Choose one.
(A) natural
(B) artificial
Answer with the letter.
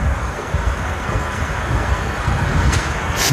B